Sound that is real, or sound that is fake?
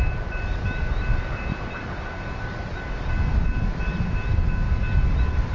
real